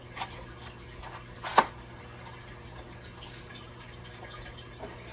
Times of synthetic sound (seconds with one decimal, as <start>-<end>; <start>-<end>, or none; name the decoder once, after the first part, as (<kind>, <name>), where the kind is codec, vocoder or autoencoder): none